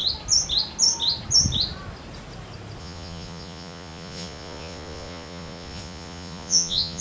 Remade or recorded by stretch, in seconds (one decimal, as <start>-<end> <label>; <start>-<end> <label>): 0.0-2.8 recorded; 2.8-7.0 remade